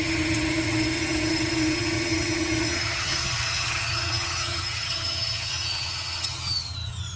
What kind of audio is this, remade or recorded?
remade